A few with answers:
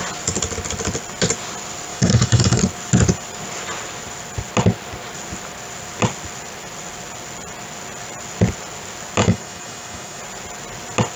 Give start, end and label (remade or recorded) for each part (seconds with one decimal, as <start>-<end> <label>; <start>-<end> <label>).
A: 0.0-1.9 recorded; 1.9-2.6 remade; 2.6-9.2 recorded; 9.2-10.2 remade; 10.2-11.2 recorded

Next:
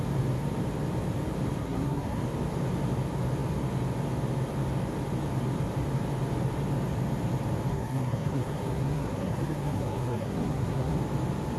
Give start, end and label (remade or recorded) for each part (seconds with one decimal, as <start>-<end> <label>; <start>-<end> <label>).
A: 0.0-1.6 recorded; 1.6-2.2 remade; 2.2-7.7 recorded; 7.7-11.0 remade; 11.0-11.6 recorded

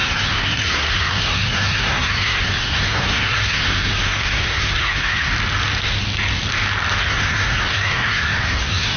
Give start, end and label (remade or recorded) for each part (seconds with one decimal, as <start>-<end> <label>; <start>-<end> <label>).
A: 0.0-5.3 remade; 5.3-7.0 recorded; 7.0-9.0 remade

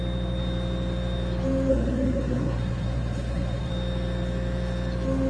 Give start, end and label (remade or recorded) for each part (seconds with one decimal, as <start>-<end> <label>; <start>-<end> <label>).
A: 0.0-1.7 recorded; 1.7-3.7 remade; 3.7-5.3 recorded

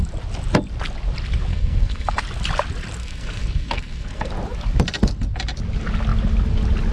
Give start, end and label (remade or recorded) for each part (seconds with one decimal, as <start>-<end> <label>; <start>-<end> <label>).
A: 0.0-1.5 recorded; 1.5-2.2 remade; 2.2-3.0 recorded; 3.0-4.3 remade; 4.3-6.9 recorded

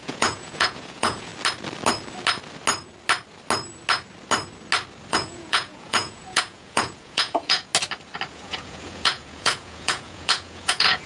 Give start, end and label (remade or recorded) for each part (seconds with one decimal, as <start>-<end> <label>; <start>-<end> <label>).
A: 0.0-1.3 remade; 1.3-5.1 recorded; 5.1-7.7 remade; 7.7-8.3 recorded; 8.3-11.1 remade